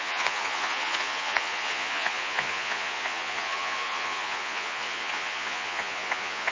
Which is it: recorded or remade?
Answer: remade